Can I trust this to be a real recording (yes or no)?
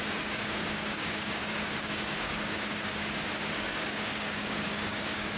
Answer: no